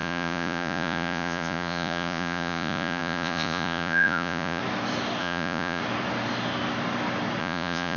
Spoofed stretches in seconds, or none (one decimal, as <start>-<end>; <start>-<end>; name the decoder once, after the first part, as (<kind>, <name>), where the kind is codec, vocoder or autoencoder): 0.0-4.6 (vocoder, Vocos); 5.2-5.8; 7.4-8.0